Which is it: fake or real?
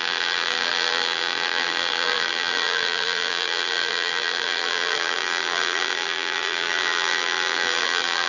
fake